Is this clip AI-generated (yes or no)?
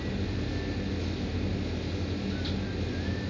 no